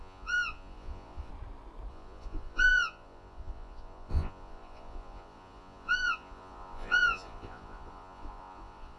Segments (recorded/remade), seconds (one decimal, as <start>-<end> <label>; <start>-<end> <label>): 0.0-1.3 remade; 1.3-1.9 recorded; 1.9-9.0 remade